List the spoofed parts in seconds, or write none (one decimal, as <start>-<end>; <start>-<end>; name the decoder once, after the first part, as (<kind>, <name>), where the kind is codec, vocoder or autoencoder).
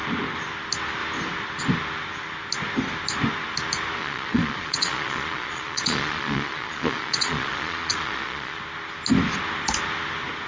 4.0-8.6 (vocoder, Vocos)